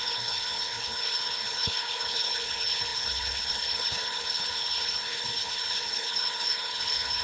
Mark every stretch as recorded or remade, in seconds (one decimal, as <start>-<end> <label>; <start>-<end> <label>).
0.0-7.2 remade